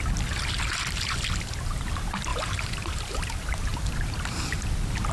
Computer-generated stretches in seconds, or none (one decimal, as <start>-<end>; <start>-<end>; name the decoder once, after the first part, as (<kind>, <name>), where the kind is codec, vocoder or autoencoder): 2.3-3.0 (vocoder, BigVGAN v2)